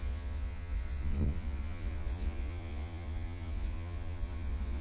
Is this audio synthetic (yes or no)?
yes